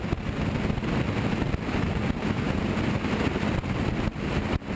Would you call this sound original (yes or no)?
yes